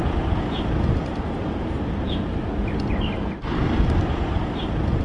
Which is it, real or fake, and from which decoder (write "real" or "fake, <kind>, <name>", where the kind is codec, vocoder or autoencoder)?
real